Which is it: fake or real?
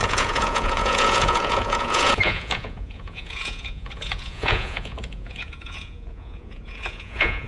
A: fake